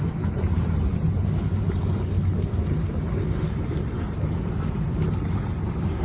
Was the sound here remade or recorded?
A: recorded